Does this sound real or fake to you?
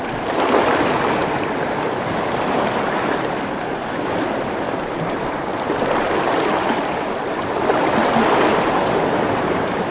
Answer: real